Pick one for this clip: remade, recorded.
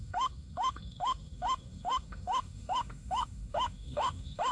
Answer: remade